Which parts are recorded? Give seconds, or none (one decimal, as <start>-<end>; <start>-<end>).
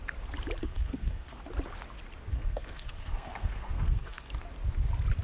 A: 0.0-0.6; 1.4-2.3; 4.3-5.2